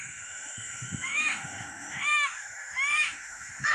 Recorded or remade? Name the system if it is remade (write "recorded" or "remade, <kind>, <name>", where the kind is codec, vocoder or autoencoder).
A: remade, autoencoder, DAC-VAE